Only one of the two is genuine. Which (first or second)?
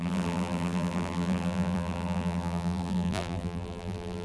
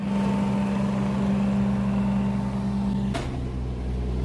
second